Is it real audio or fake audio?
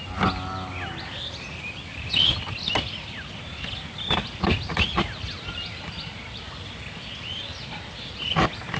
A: real